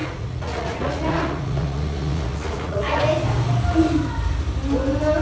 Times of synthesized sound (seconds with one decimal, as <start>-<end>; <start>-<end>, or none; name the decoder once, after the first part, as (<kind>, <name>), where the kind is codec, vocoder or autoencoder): 0.0-3.0 (vocoder, Vocos)